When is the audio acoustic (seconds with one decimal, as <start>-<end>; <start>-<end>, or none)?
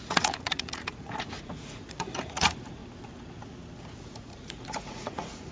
2.8-4.0